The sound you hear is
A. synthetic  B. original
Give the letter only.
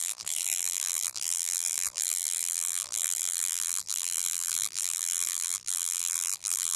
A